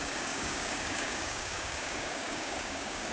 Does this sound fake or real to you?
fake